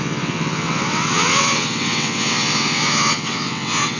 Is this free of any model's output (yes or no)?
no